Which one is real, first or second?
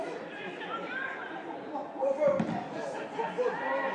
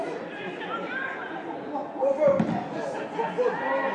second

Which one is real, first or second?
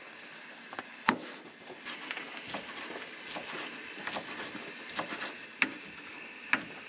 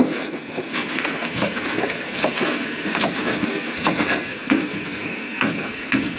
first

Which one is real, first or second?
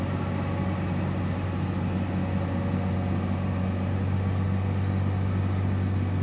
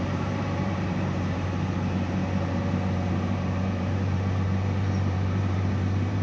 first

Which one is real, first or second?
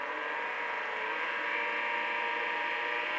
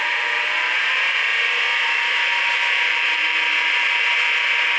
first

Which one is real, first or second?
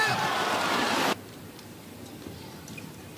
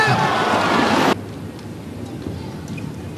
second